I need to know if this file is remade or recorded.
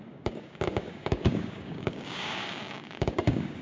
remade